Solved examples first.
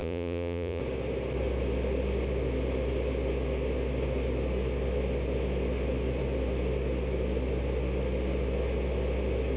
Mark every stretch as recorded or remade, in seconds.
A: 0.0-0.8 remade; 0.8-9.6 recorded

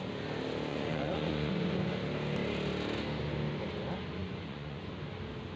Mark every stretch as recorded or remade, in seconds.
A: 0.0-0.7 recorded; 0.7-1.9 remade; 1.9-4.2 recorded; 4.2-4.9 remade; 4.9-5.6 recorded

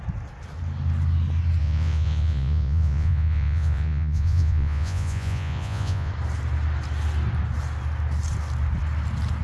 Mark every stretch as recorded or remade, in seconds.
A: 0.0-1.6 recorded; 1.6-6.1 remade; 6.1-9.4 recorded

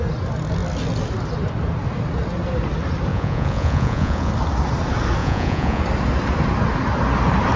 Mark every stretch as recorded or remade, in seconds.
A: 0.0-3.1 recorded; 3.1-4.3 remade; 4.3-5.2 recorded; 5.2-5.8 remade; 5.8-7.6 recorded